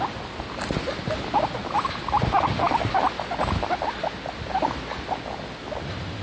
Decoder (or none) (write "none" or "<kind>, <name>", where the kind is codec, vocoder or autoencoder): none